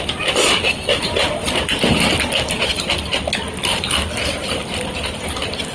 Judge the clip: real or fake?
real